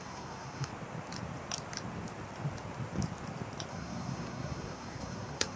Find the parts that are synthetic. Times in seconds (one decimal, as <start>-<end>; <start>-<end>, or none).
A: 0.0-0.7; 3.7-5.6